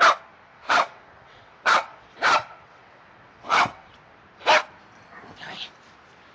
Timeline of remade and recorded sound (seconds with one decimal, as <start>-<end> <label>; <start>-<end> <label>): 0.0-0.5 recorded; 0.5-4.2 remade; 4.2-6.3 recorded